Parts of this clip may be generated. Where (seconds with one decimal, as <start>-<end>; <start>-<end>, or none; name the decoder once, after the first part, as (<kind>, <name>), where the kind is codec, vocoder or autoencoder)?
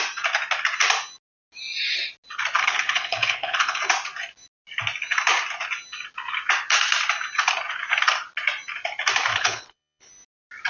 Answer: 2.6-3.8 (codec, HILCodec); 9.3-10.1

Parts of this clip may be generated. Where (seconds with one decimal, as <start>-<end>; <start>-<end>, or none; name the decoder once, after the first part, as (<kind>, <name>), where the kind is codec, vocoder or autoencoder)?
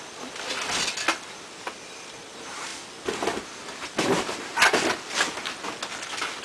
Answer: none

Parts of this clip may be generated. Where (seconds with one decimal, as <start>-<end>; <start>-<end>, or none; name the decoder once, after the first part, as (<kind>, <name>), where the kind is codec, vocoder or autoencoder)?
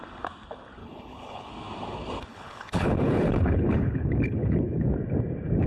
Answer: 0.8-1.5 (codec, HILCodec); 2.3-4.9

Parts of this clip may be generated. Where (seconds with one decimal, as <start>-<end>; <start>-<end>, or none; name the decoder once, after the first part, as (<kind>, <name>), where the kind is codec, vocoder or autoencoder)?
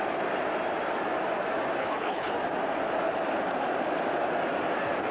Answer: 1.8-2.3 (codec, HILCodec)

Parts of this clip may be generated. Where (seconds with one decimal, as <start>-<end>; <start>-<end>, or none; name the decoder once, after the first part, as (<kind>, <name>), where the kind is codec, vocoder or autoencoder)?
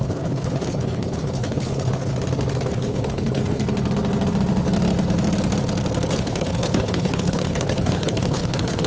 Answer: 0.0-2.1 (codec, HILCodec); 2.7-3.6; 6.1-8.9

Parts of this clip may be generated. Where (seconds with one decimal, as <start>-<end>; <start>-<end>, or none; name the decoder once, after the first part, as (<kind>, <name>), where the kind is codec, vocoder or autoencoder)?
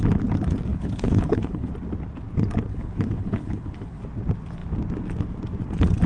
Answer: 0.7-1.7 (codec, HILCodec); 2.7-4.0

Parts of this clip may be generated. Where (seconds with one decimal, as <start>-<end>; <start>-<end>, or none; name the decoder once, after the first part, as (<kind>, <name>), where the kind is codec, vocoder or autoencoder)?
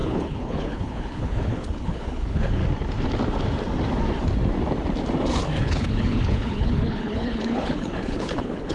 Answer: 0.0-2.6 (codec, HILCodec); 5.6-8.7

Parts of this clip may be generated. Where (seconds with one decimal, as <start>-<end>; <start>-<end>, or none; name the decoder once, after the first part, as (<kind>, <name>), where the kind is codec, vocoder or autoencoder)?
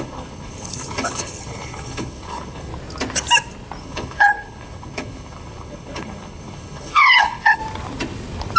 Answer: 0.0-2.7 (codec, HILCodec); 3.8-7.6